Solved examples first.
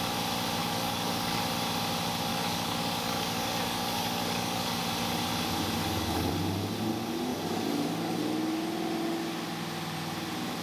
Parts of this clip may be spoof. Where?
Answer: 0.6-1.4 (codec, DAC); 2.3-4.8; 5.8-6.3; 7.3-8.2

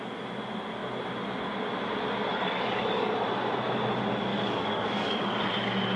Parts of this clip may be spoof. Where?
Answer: 2.3-3.1 (codec, DAC); 4.3-5.4

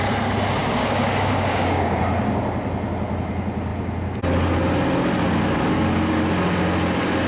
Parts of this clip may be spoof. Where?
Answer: 0.6-2.0 (codec, DAC)

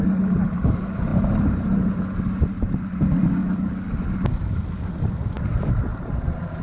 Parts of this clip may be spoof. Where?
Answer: 3.4-4.0 (codec, DAC)